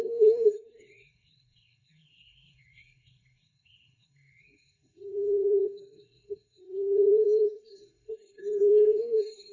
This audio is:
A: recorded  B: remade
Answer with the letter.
B